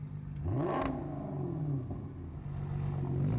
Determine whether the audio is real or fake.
real